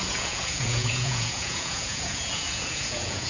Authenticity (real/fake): fake